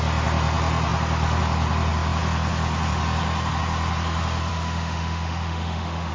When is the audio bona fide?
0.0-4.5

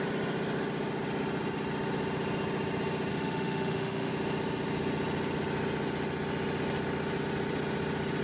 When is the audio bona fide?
0.0-3.1; 4.1-8.2

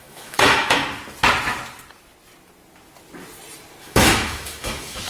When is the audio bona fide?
0.8-3.8

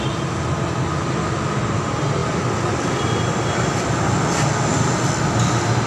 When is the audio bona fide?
0.0-5.9

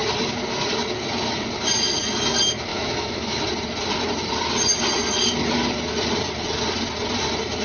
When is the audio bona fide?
0.0-2.7; 3.4-7.6

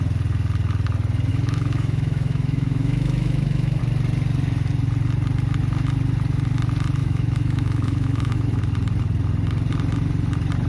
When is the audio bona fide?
0.0-1.3; 3.8-7.0; 8.6-10.7